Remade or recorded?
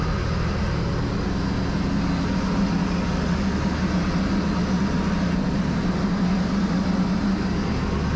recorded